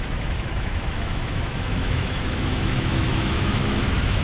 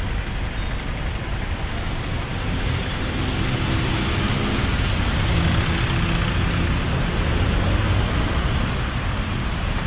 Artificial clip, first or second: first